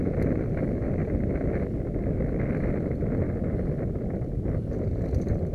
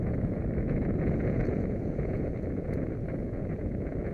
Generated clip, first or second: second